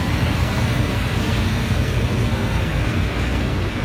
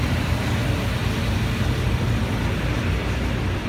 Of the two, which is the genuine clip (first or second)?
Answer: second